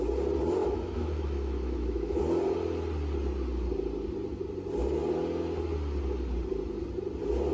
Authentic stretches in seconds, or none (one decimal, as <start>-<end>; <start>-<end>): 0.0-0.6; 2.2-7.5

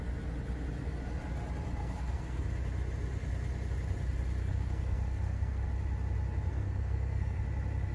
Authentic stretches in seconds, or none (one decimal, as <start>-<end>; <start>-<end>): 0.0-1.8; 2.4-4.4; 5.7-6.5; 7.4-7.9